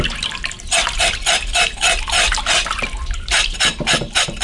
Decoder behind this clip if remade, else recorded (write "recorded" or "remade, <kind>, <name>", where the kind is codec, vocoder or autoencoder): recorded